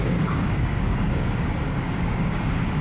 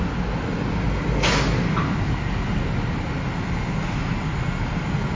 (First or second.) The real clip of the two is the second